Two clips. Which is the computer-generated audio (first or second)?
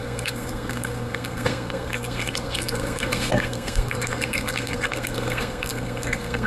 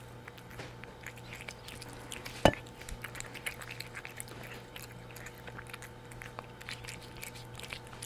first